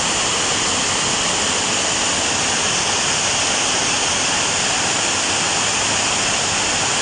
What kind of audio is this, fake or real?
fake